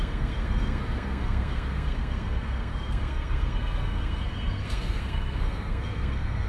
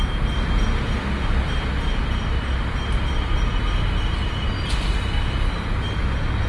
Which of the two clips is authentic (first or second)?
second